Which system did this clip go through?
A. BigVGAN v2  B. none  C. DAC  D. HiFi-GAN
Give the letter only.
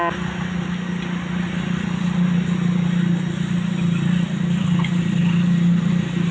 B